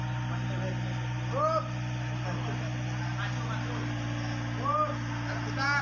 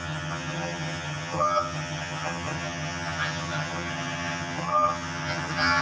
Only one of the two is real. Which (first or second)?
first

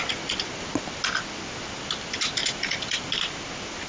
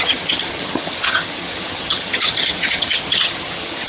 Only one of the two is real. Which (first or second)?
first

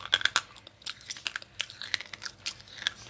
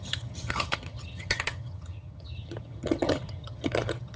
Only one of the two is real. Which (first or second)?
first